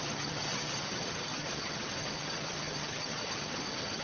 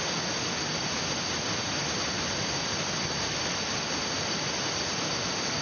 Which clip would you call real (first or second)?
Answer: second